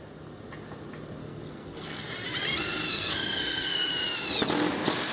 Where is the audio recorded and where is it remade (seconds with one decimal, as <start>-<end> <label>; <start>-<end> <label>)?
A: 0.0-1.2 recorded; 1.2-2.1 remade; 2.1-2.9 recorded; 2.9-3.9 remade; 3.9-5.1 recorded